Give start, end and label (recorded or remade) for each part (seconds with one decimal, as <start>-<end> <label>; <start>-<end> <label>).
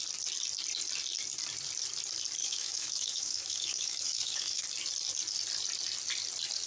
0.0-2.4 recorded; 2.4-4.6 remade; 4.6-6.7 recorded